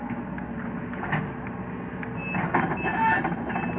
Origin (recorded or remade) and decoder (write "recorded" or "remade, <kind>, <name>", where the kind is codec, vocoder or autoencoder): recorded